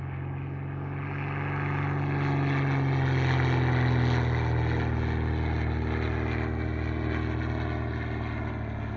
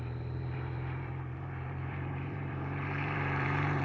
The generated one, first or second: second